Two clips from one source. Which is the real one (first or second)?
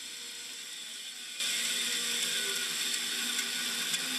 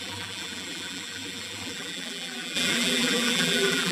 first